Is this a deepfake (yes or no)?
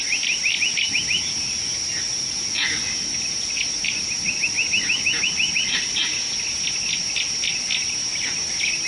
no